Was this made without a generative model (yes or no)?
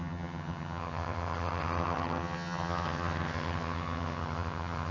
no